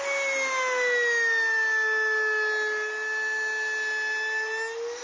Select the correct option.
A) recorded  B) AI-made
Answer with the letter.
A